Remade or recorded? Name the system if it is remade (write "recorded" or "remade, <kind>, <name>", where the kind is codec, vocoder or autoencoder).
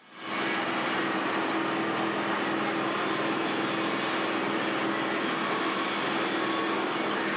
recorded